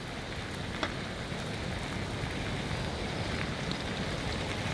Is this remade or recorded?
recorded